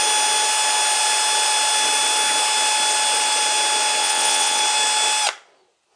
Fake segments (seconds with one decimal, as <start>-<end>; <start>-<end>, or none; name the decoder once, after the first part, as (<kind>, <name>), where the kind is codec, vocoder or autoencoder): 4.0-4.6 (vocoder, WaveNeXt)